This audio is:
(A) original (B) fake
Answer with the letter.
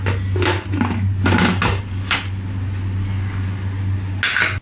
A